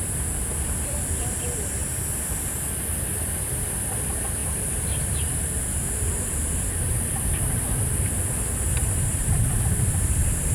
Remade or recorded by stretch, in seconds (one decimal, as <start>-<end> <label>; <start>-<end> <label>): 0.0-4.4 recorded; 4.4-7.7 remade; 7.7-9.1 recorded; 9.1-10.5 remade